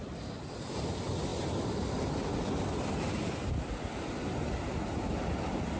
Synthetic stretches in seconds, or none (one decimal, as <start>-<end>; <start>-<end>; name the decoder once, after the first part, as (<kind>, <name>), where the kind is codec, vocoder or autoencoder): none